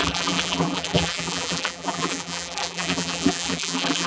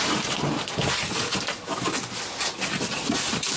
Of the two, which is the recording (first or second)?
second